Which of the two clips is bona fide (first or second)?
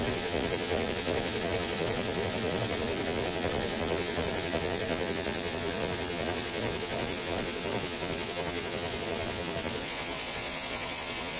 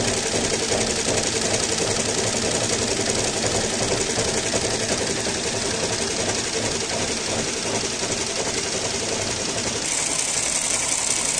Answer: second